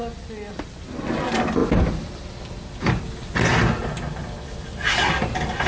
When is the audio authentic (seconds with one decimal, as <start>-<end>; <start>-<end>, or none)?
0.0-5.7